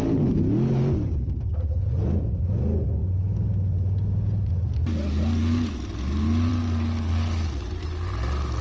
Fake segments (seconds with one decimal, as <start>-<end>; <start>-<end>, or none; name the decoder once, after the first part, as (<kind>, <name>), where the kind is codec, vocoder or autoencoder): none